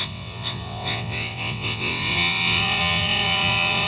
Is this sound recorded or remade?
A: remade